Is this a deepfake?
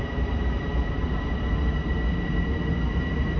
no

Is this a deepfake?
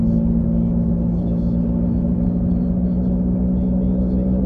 no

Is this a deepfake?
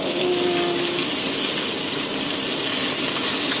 no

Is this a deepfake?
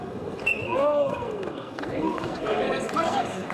yes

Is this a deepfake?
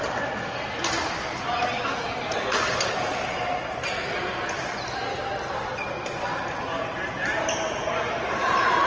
no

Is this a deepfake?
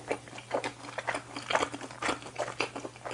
no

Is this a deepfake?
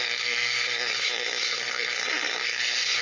yes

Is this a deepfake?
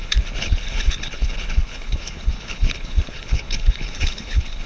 yes